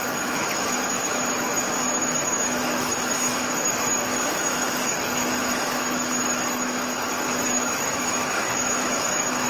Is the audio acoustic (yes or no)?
no